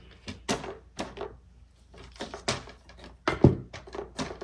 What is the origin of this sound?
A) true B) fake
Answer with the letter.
A